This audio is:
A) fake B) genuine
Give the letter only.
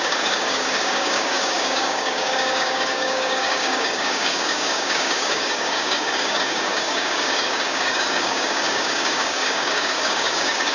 A